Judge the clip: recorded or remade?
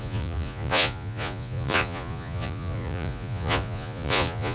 remade